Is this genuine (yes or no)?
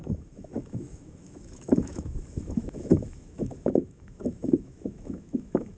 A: no